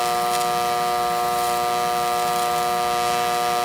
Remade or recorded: recorded